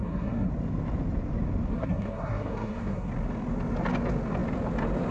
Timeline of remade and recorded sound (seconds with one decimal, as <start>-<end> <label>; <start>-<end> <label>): 0.0-0.5 remade; 0.5-1.7 recorded; 1.7-3.1 remade; 3.1-5.1 recorded